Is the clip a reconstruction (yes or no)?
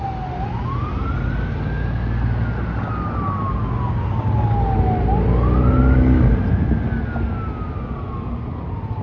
no